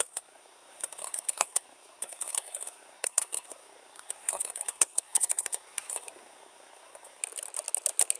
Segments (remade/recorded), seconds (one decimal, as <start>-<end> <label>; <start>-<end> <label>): 0.0-7.2 remade; 7.2-8.2 recorded